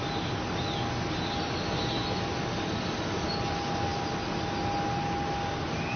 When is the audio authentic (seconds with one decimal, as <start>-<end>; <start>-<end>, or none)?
0.0-6.0